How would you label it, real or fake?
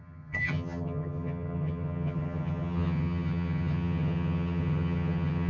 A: fake